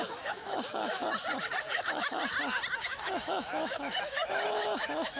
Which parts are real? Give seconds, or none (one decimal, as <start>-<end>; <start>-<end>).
1.0-1.7; 2.2-2.8